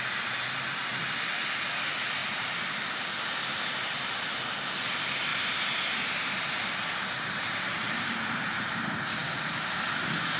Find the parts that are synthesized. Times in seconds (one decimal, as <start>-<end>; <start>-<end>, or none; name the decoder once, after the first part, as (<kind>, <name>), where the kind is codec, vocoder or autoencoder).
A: 2.2-2.8 (vocoder, BigVGAN v2); 5.3-8.1